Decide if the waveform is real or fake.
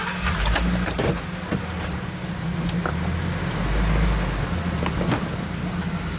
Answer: real